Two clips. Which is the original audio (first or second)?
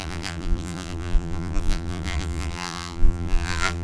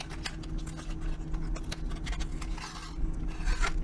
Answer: second